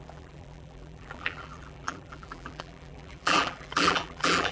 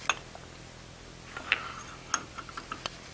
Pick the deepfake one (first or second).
first